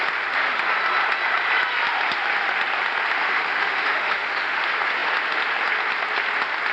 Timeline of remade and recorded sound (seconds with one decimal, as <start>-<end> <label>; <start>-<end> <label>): 0.0-3.2 recorded; 3.2-4.6 remade; 4.6-6.7 recorded